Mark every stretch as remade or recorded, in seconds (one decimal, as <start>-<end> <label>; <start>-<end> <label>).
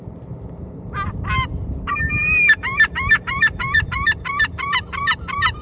0.0-5.6 remade